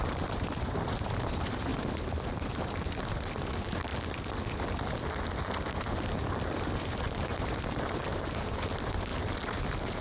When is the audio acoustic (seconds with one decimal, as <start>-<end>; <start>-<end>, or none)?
3.9-6.6; 9.1-10.0